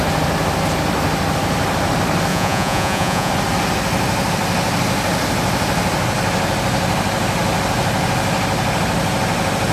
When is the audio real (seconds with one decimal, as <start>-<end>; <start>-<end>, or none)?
0.0-2.3; 3.3-9.7